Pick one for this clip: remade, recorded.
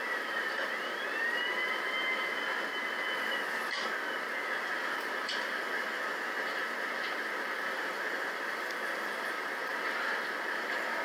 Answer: recorded